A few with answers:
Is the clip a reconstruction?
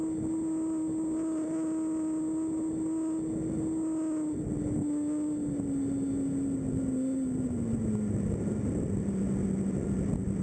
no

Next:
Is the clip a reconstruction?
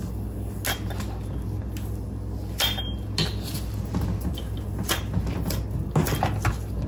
no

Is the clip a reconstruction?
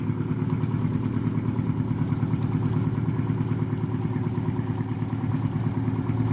no